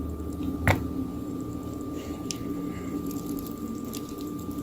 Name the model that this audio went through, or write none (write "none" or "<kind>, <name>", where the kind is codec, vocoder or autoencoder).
none